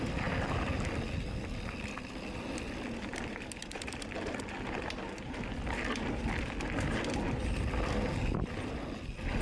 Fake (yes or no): no